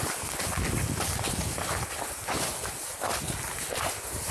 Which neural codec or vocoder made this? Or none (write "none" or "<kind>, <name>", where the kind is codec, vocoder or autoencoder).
none